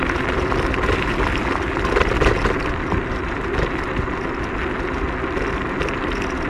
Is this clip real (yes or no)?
yes